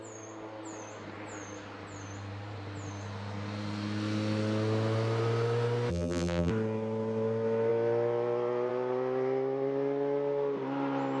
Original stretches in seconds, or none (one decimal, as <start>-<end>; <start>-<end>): 0.0-5.9; 6.5-11.2